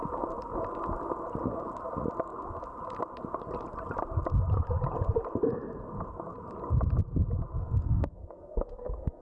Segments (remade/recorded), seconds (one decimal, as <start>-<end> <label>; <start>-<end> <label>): 0.0-7.6 recorded; 7.6-9.2 remade